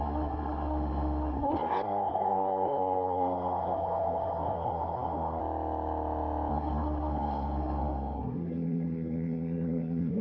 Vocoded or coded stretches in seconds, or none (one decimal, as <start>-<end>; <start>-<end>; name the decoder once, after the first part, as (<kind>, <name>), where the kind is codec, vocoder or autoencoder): 0.0-5.4 (codec, SNAC); 6.5-10.2